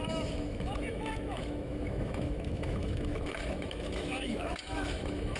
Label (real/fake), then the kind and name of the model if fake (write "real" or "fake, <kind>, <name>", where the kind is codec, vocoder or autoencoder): fake, autoencoder, DAC-VAE